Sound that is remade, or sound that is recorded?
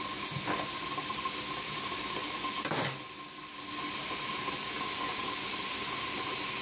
recorded